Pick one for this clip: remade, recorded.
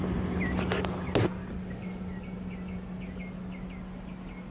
recorded